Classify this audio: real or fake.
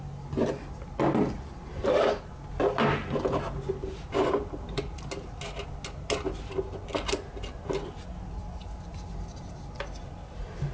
real